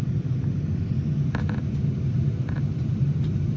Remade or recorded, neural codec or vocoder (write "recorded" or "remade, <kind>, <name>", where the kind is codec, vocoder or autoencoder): recorded